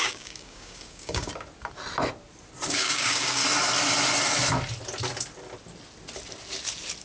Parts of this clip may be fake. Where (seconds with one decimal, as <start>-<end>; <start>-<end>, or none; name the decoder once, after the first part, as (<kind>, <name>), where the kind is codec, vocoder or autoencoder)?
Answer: 0.0-1.3 (codec, DAC); 2.7-3.4